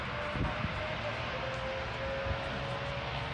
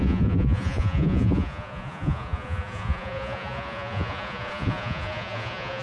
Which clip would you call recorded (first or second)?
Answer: first